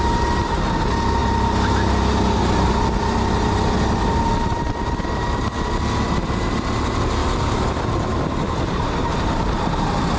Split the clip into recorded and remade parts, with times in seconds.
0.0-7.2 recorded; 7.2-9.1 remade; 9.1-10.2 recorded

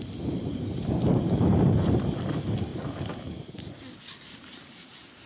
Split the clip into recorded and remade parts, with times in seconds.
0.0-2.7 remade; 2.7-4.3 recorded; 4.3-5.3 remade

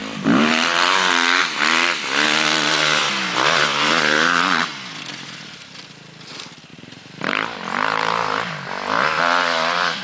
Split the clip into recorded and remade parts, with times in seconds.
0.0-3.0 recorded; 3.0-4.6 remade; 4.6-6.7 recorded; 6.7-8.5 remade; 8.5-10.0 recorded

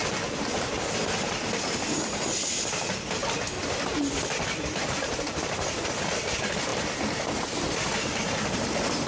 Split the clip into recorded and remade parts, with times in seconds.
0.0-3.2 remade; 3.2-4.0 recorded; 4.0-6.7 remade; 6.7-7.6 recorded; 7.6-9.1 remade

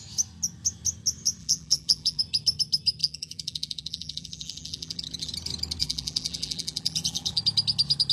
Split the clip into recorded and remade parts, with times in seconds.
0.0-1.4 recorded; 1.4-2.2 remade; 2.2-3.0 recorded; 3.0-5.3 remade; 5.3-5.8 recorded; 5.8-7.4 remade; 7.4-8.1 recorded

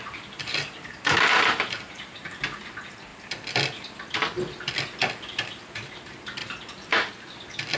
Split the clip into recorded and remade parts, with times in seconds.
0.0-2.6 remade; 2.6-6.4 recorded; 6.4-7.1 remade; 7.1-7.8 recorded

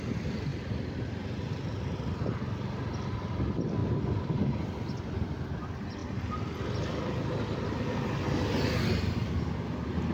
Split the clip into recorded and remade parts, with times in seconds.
0.0-0.5 recorded; 0.5-1.1 remade; 1.1-3.8 recorded; 3.8-4.6 remade; 4.6-10.1 recorded

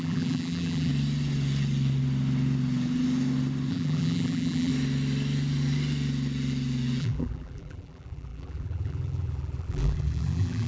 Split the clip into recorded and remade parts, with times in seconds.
0.0-0.9 remade; 0.9-3.7 recorded; 3.7-4.7 remade; 4.7-7.0 recorded; 7.0-10.7 remade